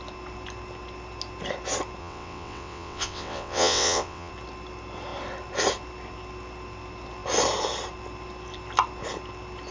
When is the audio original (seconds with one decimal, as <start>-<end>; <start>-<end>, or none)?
0.0-2.0; 4.3-9.7